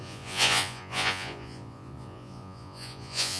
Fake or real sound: fake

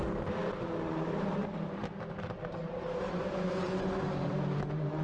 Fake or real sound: fake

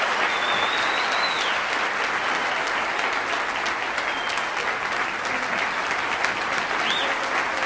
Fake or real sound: real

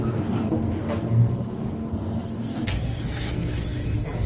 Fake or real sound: fake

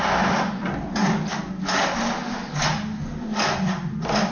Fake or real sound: real